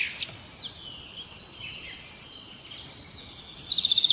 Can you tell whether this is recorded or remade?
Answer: recorded